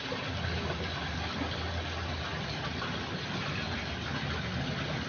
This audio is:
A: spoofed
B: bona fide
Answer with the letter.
B